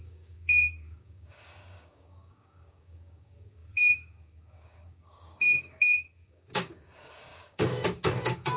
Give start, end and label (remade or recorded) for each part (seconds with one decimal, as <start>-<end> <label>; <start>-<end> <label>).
0.0-8.6 remade